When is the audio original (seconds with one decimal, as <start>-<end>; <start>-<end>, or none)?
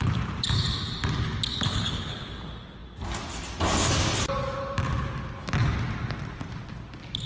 0.0-1.7; 2.3-7.3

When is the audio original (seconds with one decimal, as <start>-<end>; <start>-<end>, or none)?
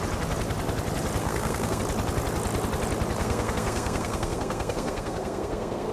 0.0-1.2; 1.8-3.2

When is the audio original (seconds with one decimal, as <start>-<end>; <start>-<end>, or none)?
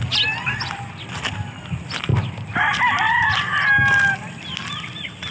0.0-5.3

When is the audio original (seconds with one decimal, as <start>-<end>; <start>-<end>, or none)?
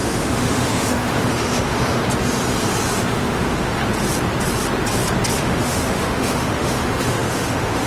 2.0-3.0; 3.8-5.3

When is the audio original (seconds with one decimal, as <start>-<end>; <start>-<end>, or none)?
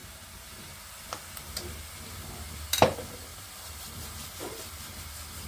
0.7-3.3; 5.0-5.5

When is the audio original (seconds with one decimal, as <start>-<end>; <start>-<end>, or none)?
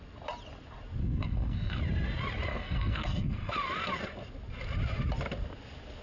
0.0-1.0; 1.8-2.5; 3.5-6.0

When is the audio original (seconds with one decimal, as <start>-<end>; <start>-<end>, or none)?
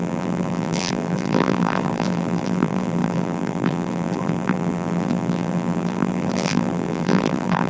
none